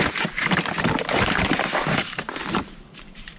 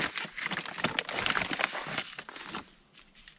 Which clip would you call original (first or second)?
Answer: second